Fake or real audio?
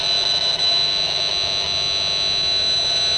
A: real